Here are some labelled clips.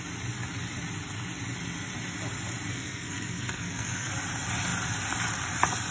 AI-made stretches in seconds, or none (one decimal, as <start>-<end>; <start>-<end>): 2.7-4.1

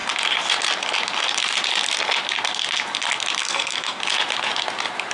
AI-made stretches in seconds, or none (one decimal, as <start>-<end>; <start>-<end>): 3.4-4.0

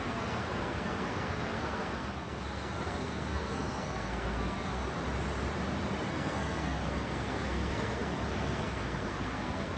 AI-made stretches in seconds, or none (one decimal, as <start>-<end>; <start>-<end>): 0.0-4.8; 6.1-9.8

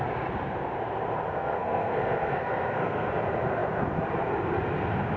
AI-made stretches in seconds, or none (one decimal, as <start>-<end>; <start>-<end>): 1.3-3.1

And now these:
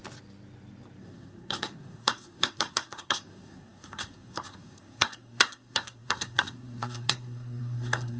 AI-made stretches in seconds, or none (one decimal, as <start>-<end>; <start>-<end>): 1.0-8.2

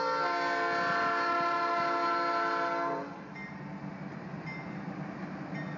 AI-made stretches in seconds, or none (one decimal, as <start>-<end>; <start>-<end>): none

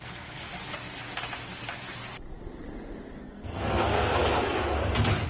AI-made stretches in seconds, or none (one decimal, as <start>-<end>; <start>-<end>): 0.0-0.6; 3.2-4.2